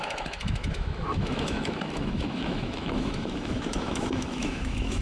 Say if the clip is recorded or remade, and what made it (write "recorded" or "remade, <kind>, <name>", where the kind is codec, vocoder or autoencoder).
remade, autoencoder, DAC-VAE